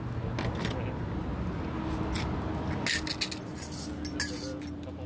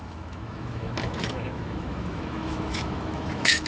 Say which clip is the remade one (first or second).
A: second